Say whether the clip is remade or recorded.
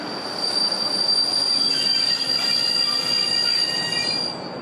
recorded